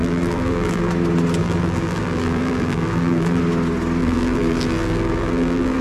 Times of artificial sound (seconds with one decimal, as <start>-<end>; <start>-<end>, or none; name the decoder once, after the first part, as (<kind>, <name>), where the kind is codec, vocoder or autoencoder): 0.0-0.9 (vocoder, BigVGAN v2); 1.4-3.4; 4.0-5.8